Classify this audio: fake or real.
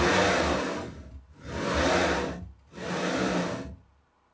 real